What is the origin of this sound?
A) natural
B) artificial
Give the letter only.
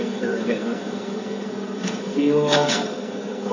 B